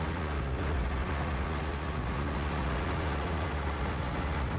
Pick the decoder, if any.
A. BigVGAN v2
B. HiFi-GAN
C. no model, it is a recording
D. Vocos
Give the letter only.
D